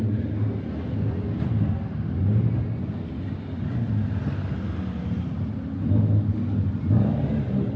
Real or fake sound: real